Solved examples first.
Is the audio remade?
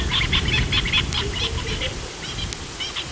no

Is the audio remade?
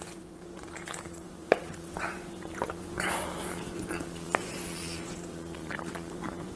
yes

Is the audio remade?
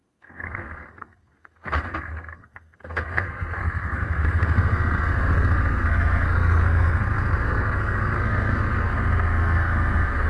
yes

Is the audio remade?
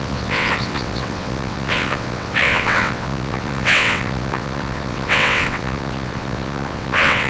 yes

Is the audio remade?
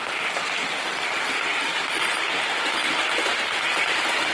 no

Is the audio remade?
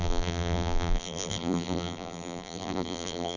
yes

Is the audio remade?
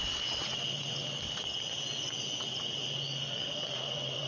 yes